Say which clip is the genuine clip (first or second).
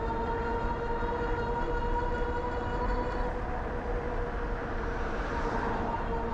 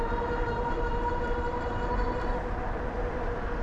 first